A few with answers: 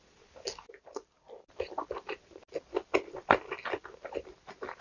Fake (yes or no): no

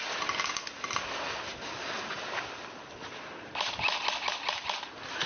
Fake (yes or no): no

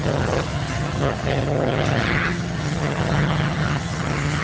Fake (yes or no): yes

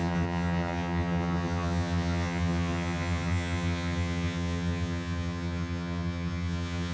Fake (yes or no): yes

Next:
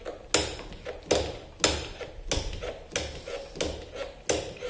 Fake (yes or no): no